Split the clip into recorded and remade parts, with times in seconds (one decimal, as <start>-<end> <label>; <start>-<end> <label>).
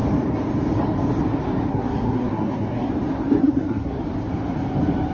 0.0-1.7 recorded; 1.7-2.9 remade; 2.9-3.4 recorded; 3.4-4.0 remade; 4.0-5.1 recorded